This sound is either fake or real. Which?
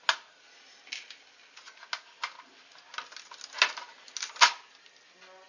real